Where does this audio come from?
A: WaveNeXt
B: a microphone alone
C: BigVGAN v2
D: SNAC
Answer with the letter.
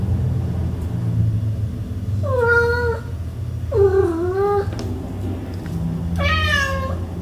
B